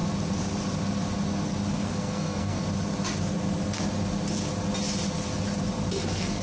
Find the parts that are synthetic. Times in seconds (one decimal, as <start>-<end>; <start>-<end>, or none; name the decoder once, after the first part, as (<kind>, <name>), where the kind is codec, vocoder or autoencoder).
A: 1.7-2.6 (codec, SNAC); 6.0-6.4